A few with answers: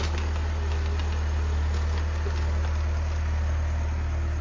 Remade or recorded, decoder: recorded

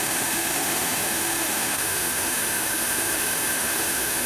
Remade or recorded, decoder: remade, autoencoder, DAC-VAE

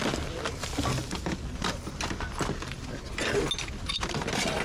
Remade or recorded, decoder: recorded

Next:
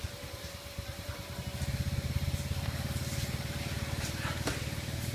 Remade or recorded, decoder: remade, vocoder, BigVGAN v2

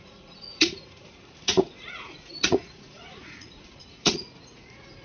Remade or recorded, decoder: remade, vocoder, Vocos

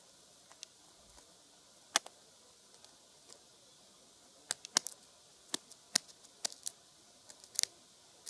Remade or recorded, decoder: recorded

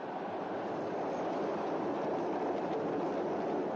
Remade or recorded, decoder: recorded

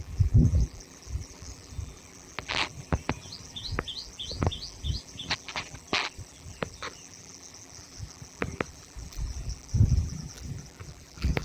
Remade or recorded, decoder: remade, vocoder, BigVGAN v2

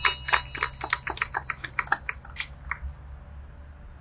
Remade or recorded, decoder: recorded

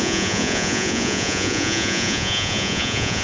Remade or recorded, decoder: remade, vocoder, Vocos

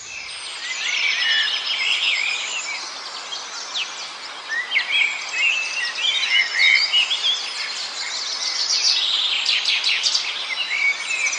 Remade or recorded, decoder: recorded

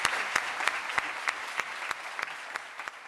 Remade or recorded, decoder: recorded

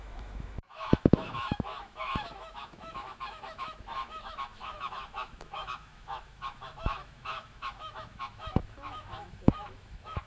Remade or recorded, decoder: remade, autoencoder, DAC-VAE